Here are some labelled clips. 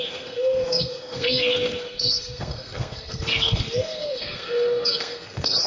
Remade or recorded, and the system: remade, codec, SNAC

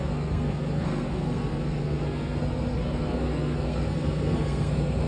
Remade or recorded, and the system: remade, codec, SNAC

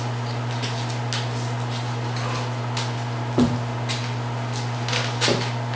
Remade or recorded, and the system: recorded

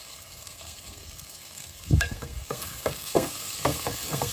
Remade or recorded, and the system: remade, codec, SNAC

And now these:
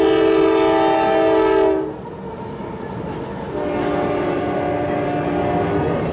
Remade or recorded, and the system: recorded